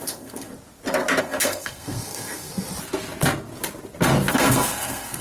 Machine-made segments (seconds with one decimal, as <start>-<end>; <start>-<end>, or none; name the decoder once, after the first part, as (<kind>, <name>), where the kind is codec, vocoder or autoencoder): 0.0-0.5 (codec, SNAC); 1.2-2.5; 4.3-5.2